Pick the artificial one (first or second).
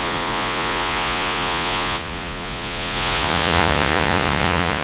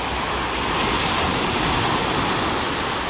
first